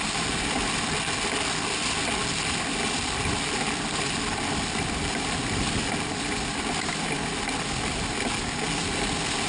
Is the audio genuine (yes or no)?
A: yes